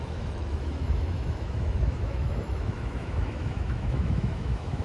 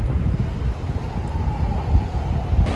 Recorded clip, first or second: second